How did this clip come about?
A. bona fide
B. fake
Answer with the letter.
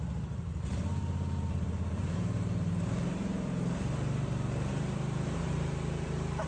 B